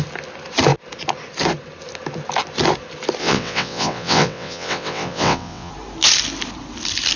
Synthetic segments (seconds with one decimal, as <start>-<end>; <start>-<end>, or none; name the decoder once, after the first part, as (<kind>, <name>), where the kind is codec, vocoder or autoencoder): 3.2-5.7 (vocoder, WaveNeXt)